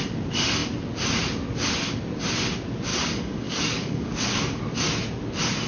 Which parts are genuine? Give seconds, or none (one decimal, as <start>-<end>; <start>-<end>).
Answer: 0.0-2.9; 4.6-5.7